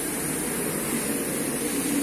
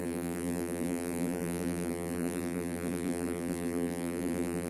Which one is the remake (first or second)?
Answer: second